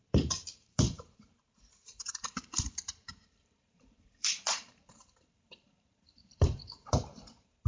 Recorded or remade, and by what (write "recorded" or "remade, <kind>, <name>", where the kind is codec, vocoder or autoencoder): remade, vocoder, BigVGAN v2